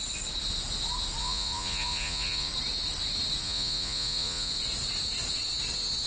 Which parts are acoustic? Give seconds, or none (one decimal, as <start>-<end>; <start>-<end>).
0.0-1.2; 2.5-3.4; 4.5-6.1